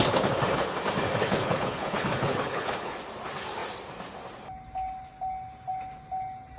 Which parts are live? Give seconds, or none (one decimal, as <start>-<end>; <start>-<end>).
0.0-1.2; 3.0-6.6